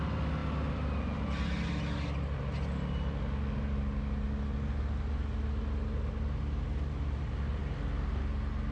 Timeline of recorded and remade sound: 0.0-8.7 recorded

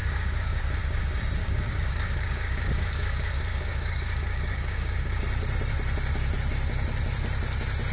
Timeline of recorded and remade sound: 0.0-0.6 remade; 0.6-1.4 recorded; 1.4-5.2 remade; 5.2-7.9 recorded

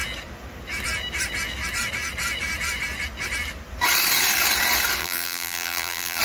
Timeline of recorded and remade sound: 0.0-5.0 recorded; 5.0-6.2 remade

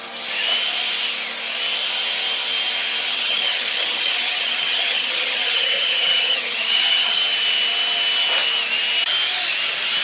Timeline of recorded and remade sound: 0.0-3.0 recorded; 3.0-7.2 remade; 7.2-10.0 recorded

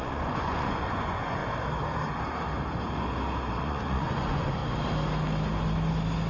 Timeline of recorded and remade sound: 0.0-1.4 remade; 1.4-3.6 recorded; 3.6-4.6 remade; 4.6-6.3 recorded

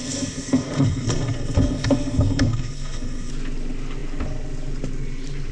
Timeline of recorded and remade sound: 0.0-3.3 remade; 3.3-5.5 recorded

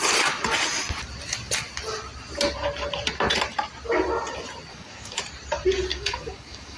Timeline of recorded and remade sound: 0.0-4.7 recorded; 4.7-5.2 remade; 5.2-5.9 recorded; 5.9-6.8 remade

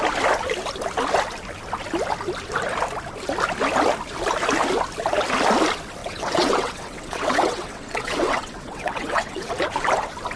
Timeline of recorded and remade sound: 0.0-6.0 recorded; 6.0-9.5 remade; 9.5-10.4 recorded